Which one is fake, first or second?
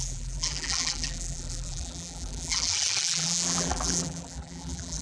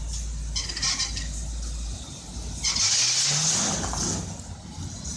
first